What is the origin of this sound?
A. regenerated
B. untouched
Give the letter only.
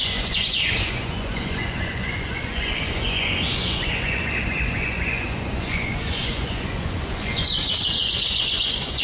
A